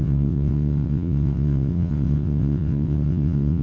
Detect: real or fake fake